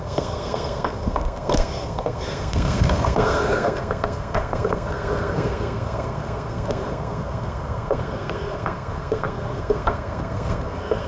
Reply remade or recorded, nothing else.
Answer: remade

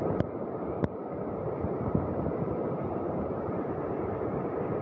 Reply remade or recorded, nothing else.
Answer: remade